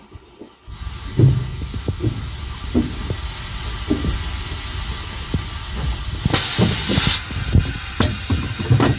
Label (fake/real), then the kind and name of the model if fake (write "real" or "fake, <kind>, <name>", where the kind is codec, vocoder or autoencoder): real